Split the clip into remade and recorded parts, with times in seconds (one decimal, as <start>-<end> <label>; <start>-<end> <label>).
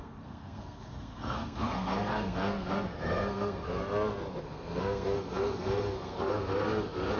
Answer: 0.0-3.8 remade; 3.8-4.4 recorded; 4.4-7.2 remade